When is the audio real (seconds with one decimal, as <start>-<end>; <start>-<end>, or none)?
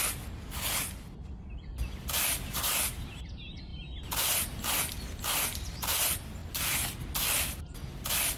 0.0-8.4